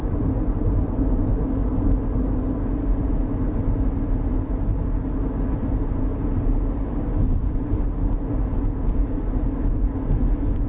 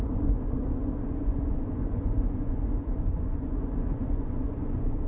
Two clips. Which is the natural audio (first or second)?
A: first